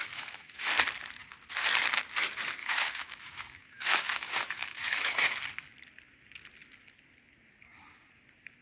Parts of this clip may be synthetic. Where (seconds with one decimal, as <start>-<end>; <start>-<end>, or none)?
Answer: 0.0-0.7; 2.6-5.4

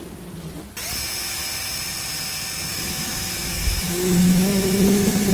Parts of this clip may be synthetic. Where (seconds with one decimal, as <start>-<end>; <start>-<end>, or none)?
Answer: 2.7-5.3